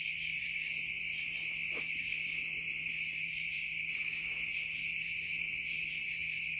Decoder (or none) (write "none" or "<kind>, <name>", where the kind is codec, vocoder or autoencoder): none